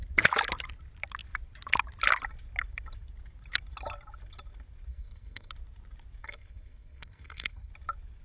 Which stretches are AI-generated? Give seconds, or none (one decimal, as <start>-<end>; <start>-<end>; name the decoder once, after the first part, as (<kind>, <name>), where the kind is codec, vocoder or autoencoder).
4.9-5.5 (codec, SNAC); 6.2-7.7